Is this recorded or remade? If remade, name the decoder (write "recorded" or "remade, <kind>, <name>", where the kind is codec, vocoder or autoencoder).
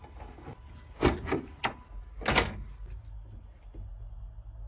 recorded